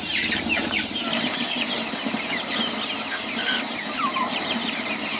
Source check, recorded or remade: remade